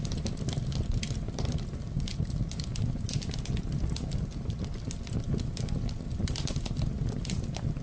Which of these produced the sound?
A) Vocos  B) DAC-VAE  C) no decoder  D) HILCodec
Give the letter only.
C